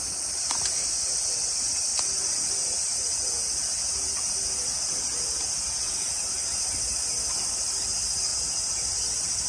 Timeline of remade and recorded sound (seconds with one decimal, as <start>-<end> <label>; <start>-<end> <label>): 0.0-3.1 recorded; 3.1-4.3 remade; 4.3-5.3 recorded; 5.3-6.2 remade; 6.2-8.3 recorded; 8.3-8.9 remade; 8.9-9.5 recorded